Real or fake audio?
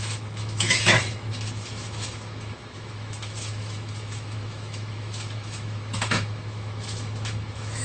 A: fake